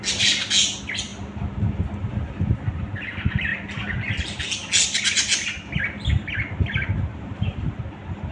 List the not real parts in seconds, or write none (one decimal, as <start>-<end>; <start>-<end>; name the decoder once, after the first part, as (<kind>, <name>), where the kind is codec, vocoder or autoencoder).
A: 7.1-7.8 (vocoder, BigVGAN v2)